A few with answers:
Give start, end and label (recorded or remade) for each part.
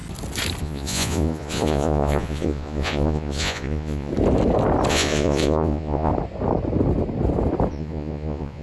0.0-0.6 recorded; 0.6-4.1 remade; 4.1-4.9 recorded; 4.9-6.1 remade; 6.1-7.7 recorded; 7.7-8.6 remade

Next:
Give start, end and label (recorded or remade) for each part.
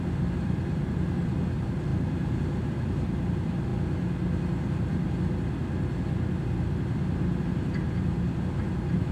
0.0-3.7 remade; 3.7-7.5 recorded; 7.5-9.1 remade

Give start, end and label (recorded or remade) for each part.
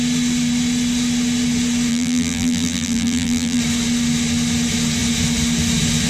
0.0-1.9 recorded; 1.9-3.6 remade; 3.6-6.1 recorded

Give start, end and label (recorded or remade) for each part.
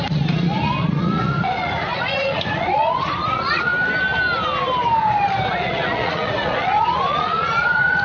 0.0-3.7 remade; 3.7-5.5 recorded; 5.5-8.0 remade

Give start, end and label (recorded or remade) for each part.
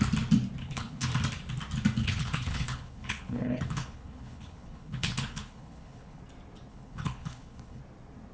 0.0-0.6 recorded; 0.6-1.1 remade; 1.1-2.0 recorded; 2.0-6.2 remade; 6.2-6.7 recorded; 6.7-7.8 remade; 7.8-8.3 recorded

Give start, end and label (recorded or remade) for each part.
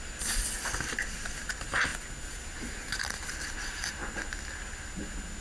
0.0-5.4 recorded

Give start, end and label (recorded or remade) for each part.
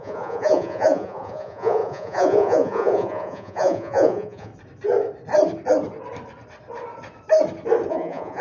0.0-4.5 remade; 4.5-7.9 recorded; 7.9-8.4 remade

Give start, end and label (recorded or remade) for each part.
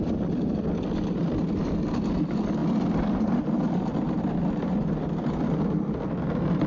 0.0-6.7 recorded